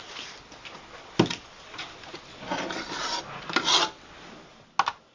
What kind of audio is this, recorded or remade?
recorded